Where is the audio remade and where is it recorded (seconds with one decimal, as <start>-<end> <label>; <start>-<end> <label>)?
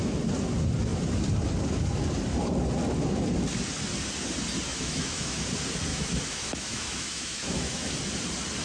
0.0-4.7 recorded; 4.7-5.4 remade; 5.4-5.9 recorded; 5.9-7.9 remade; 7.9-8.6 recorded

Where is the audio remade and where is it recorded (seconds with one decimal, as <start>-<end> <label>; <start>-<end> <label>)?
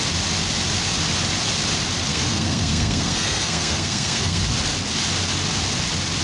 0.0-2.1 recorded; 2.1-4.4 remade; 4.4-6.2 recorded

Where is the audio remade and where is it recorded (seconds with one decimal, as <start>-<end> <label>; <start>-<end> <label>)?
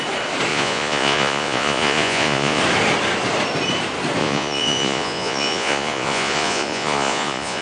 0.0-0.5 recorded; 0.5-2.6 remade; 2.6-4.2 recorded; 4.2-7.6 remade